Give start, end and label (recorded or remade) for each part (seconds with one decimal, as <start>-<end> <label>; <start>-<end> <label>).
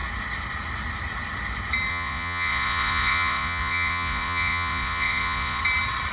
0.0-1.9 recorded; 1.9-5.6 remade; 5.6-6.1 recorded